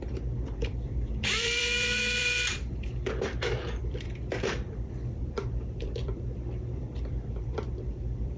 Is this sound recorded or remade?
remade